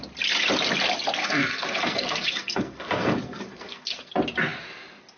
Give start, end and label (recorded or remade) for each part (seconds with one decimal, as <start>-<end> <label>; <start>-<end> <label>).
0.0-1.2 recorded; 1.2-4.1 remade; 4.1-5.2 recorded